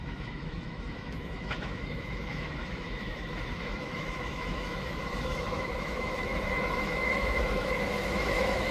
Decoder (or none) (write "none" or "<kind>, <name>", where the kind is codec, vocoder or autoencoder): autoencoder, DAC-VAE